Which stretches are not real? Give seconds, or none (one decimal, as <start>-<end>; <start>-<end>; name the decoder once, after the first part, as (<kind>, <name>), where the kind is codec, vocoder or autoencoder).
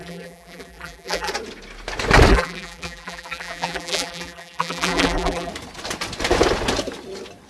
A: 0.0-1.3 (vocoder, BigVGAN v2); 2.3-5.5